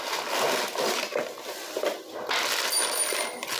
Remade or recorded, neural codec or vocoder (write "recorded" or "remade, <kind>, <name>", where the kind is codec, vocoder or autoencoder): recorded